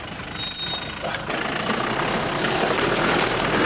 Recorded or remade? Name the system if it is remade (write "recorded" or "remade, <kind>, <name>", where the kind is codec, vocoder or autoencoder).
recorded